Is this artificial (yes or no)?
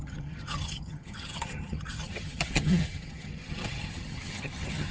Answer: yes